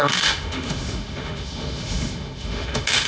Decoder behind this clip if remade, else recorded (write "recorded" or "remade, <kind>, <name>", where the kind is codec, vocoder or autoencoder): remade, autoencoder, DAC-VAE